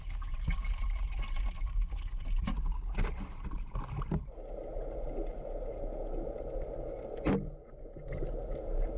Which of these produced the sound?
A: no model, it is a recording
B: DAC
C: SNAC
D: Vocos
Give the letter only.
A